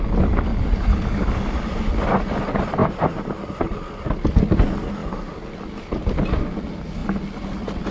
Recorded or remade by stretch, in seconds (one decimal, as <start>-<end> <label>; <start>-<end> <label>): 0.0-0.5 recorded; 0.5-1.6 remade; 1.6-7.9 recorded